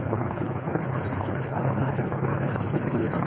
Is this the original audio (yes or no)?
no